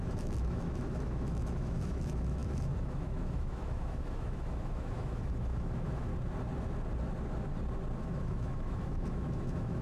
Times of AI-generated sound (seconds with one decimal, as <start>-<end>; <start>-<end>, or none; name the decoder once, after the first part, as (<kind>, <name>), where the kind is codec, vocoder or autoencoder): 0.0-6.1 (autoencoder, DAC-VAE); 8.0-9.8